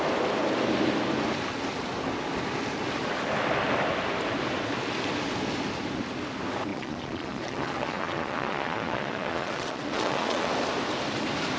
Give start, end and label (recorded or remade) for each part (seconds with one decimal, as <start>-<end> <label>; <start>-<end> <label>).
0.0-6.7 recorded; 6.7-10.5 remade; 10.5-11.6 recorded